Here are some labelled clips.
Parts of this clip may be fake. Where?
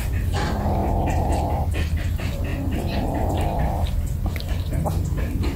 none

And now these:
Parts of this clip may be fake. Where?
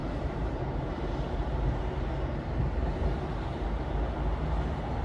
0.0-1.8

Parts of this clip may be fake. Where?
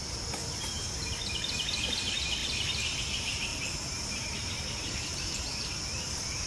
0.0-6.5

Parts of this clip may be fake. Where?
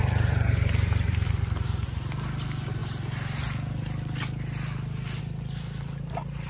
0.0-1.3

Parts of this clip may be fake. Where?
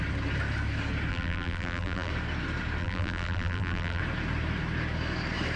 1.1-2.1; 2.8-4.0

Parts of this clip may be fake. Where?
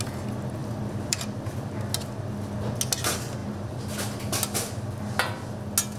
0.6-1.7; 3.4-3.9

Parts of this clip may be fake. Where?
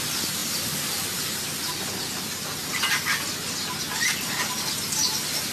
none